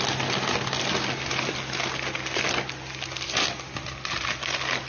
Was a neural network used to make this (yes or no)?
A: no